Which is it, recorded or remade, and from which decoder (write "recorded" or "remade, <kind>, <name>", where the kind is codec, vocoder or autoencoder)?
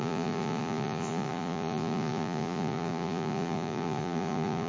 remade, vocoder, Vocos